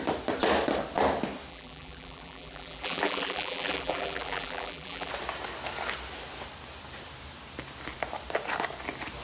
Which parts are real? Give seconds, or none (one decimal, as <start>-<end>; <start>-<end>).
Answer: 0.0-1.5; 5.1-9.2